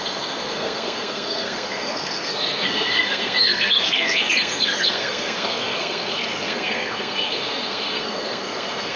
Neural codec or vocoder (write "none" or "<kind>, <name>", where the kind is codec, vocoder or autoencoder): codec, SNAC